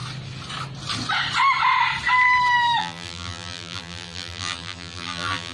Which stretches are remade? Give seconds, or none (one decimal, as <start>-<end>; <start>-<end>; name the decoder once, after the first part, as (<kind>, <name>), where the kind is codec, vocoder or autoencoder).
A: 2.8-5.5 (vocoder, BigVGAN v2)